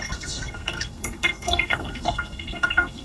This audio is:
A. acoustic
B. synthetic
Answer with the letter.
B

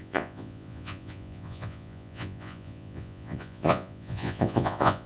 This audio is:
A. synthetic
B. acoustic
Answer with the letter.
A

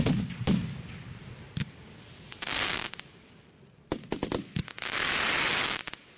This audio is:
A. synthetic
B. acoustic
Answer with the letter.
B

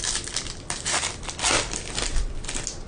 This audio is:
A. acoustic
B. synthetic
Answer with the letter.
A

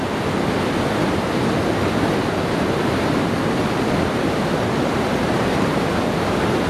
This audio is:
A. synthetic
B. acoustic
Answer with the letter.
B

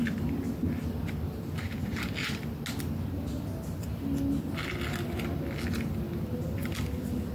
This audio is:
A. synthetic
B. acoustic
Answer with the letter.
B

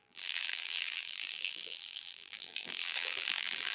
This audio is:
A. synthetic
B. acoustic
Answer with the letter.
A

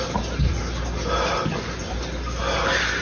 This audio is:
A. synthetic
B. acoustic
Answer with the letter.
B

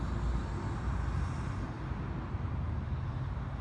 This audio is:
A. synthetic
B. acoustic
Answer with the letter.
B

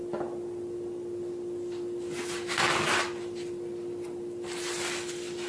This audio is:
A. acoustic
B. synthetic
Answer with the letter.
A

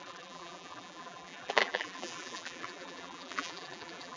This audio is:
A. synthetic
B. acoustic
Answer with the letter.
A